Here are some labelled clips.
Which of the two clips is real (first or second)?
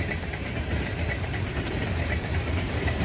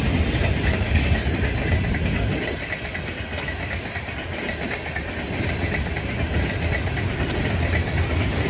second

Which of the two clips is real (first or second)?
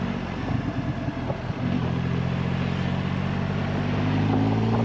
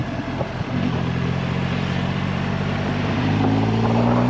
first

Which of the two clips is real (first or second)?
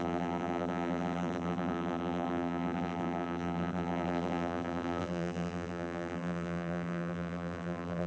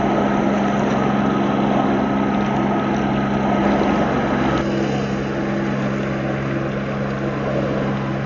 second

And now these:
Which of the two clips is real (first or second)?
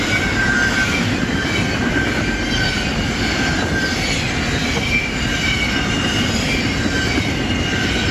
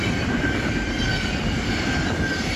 first